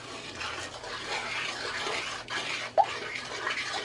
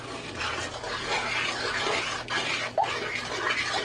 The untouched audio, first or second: second